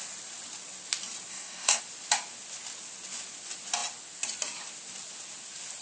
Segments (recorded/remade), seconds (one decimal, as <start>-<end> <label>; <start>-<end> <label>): 0.0-1.3 recorded; 1.3-1.8 remade; 1.8-5.8 recorded